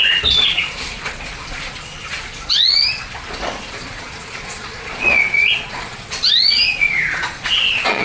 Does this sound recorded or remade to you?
remade